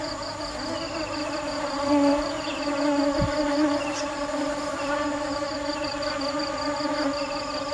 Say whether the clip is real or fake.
fake